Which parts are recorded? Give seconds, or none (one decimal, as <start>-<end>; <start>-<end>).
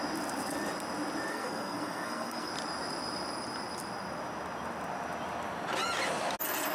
0.0-1.3; 2.5-6.7